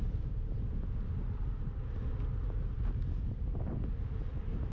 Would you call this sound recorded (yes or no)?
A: yes